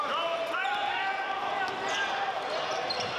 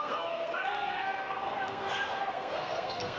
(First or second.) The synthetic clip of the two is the second